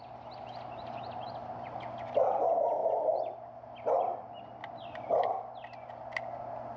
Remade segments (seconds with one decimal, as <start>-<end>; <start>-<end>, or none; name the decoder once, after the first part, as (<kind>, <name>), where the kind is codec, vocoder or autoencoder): none